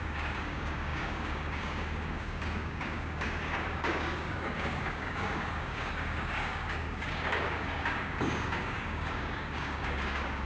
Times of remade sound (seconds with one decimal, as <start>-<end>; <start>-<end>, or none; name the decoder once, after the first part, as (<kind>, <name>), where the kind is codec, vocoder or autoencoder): 0.0-10.5 (codec, DAC)